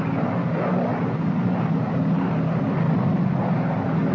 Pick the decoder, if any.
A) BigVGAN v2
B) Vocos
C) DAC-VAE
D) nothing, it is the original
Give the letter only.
D